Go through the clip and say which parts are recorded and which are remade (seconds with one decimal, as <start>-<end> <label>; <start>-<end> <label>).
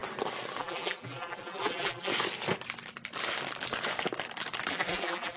0.0-0.6 recorded; 0.6-2.1 remade; 2.1-4.7 recorded; 4.7-5.4 remade